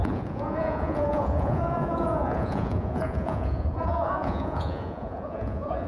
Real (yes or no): no